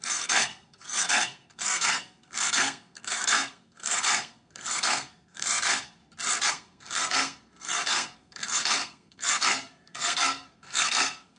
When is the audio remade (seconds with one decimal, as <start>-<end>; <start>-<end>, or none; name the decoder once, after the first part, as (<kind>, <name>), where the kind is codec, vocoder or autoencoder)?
0.0-6.0 (codec, SNAC); 6.5-11.4

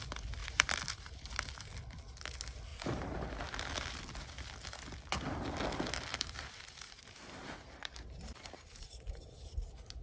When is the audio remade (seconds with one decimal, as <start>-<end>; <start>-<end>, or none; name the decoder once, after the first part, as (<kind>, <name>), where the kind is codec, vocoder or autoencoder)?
0.4-1.6 (vocoder, BigVGAN v2); 2.7-3.2; 6.1-9.3

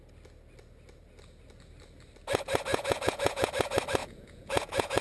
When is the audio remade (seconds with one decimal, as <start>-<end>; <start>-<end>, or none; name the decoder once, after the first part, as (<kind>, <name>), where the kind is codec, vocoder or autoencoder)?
2.7-3.5 (vocoder, Vocos); 4.0-5.0